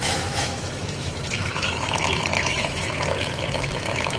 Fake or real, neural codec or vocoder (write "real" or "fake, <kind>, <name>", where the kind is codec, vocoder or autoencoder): fake, autoencoder, DAC-VAE